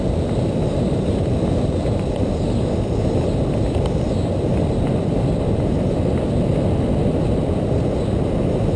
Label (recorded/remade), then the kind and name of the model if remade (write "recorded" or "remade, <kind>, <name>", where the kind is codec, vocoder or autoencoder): recorded